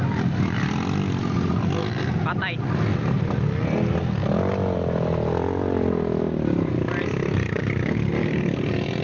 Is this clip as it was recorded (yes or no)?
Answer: yes